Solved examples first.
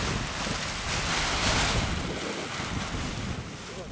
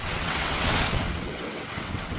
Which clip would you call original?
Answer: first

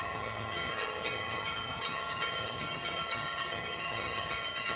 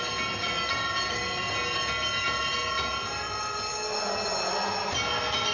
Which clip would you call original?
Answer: second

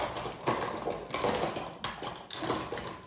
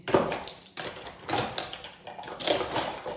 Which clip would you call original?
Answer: first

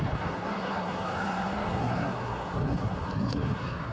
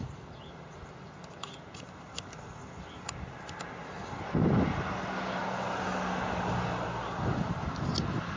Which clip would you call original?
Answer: second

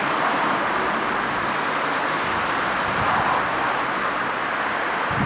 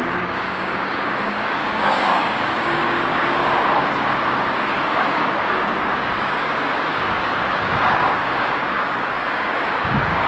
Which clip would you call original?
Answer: first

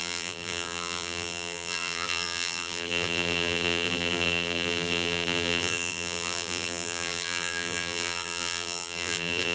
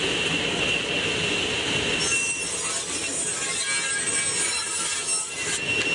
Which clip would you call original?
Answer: second